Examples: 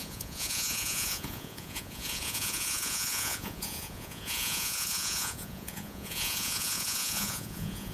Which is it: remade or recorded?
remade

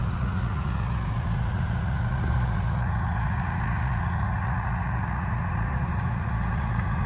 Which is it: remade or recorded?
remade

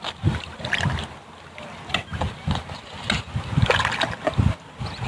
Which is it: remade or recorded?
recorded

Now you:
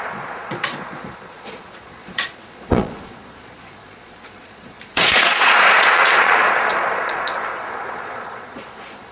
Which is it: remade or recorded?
remade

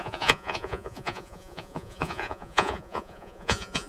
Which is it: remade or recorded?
remade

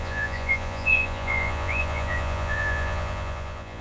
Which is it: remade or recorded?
remade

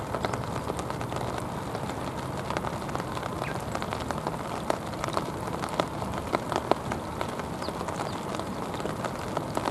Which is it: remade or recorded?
recorded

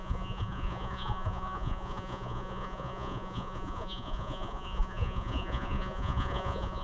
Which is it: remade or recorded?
remade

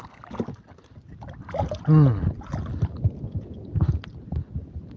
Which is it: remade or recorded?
recorded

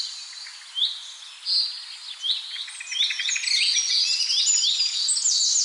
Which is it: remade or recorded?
recorded